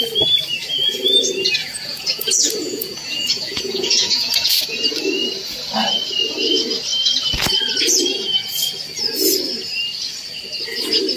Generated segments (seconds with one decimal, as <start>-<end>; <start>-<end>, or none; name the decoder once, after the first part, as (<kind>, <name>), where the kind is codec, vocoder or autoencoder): 1.6-4.5 (vocoder, Vocos)